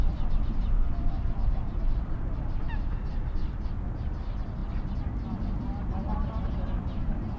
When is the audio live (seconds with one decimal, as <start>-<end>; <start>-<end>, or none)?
0.0-7.4

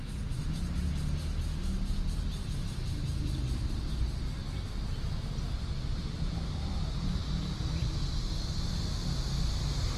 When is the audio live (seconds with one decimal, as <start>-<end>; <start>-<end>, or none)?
0.0-5.9; 7.9-10.0

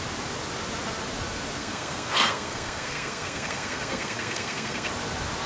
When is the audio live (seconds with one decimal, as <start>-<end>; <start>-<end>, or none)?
0.0-1.6; 4.9-5.5

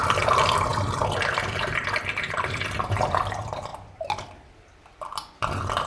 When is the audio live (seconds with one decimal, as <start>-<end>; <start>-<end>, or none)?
0.7-1.5; 3.7-4.2

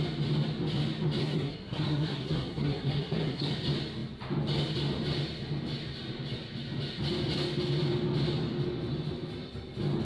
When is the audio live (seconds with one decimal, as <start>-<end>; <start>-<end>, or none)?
0.0-1.2; 3.5-10.0

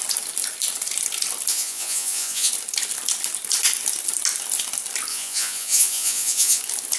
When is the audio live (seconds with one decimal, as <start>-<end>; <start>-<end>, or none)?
0.0-1.5; 2.5-5.1; 6.6-7.0

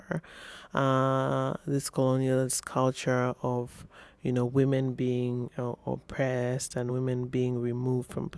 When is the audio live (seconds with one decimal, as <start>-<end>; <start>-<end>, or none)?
0.0-0.5; 4.0-8.4

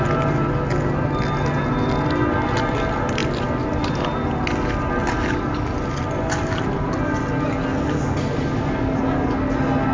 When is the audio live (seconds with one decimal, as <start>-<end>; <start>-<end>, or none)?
0.0-9.9